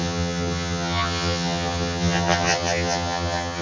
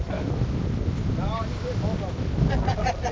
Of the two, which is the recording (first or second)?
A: second